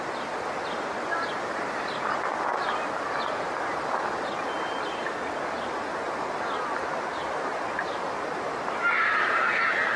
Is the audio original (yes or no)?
yes